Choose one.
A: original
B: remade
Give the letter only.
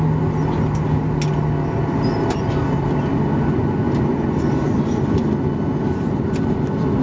A